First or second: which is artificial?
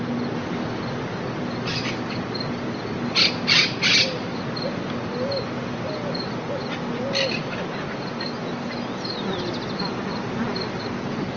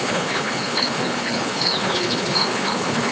second